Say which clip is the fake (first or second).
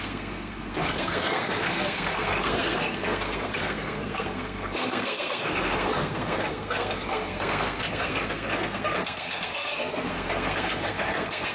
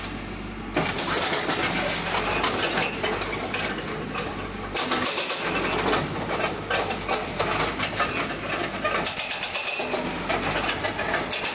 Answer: first